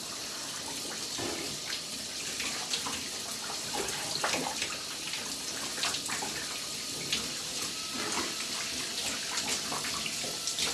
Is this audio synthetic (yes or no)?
no